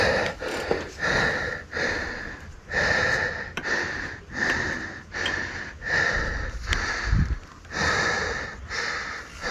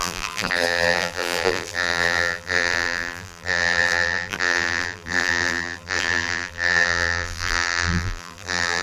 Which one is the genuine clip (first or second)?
first